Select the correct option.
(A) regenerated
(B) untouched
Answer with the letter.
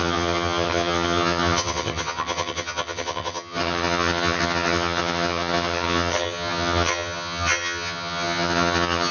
A